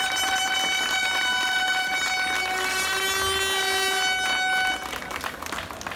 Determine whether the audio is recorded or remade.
recorded